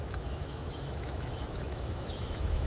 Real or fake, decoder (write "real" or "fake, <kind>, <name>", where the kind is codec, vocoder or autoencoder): fake, autoencoder, DAC-VAE